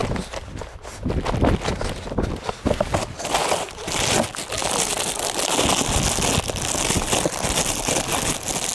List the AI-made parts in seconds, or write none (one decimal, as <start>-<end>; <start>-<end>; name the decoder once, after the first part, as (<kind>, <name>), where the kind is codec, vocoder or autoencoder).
none